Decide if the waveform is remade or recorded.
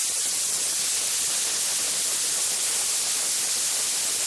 recorded